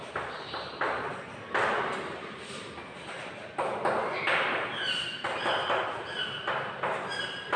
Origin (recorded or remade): recorded